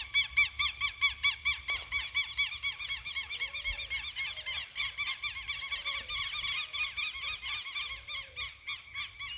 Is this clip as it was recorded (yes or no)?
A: yes